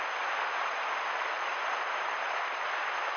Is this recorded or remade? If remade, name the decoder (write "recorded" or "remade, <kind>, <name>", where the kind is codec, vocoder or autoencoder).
recorded